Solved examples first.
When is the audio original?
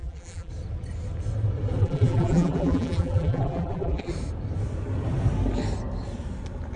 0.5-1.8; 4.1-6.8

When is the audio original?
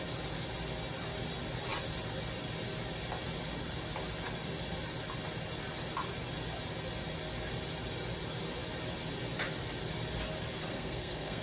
0.0-10.7